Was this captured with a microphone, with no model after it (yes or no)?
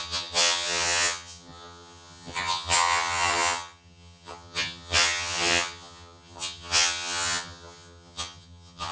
no